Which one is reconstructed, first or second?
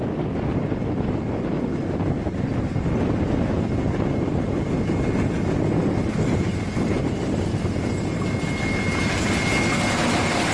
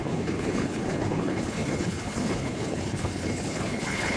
second